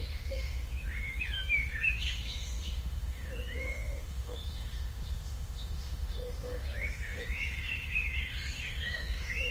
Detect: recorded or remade remade